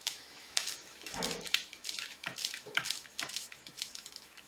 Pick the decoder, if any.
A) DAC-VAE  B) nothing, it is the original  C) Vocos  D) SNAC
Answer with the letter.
A